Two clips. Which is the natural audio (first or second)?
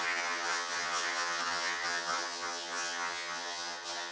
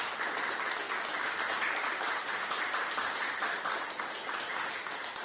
second